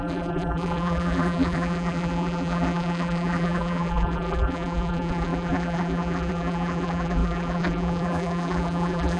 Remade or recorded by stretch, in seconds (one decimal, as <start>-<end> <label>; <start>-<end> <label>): 0.0-9.2 remade